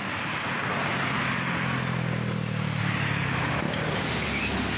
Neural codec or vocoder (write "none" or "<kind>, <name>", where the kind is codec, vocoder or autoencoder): none